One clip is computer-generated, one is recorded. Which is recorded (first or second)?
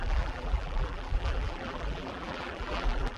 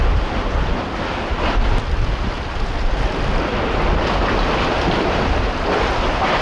second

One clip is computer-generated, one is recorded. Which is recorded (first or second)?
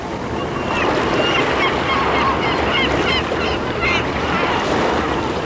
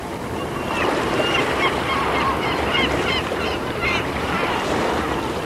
first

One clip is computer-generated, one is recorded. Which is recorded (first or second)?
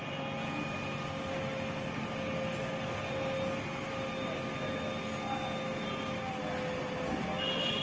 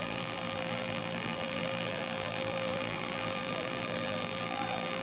first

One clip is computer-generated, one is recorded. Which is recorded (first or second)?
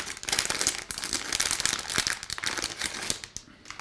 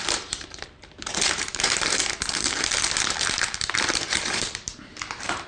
first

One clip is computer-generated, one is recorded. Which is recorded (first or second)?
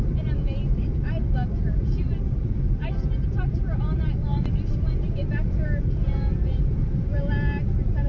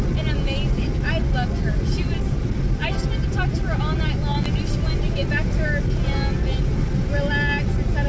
second